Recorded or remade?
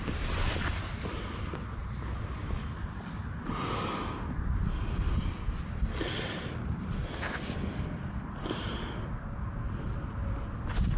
recorded